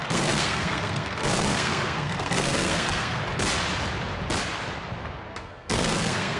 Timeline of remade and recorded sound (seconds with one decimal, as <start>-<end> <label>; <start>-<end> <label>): 0.0-3.2 remade; 3.2-5.3 recorded; 5.3-6.4 remade